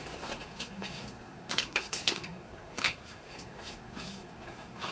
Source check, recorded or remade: remade